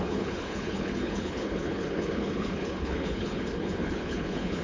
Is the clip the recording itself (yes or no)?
no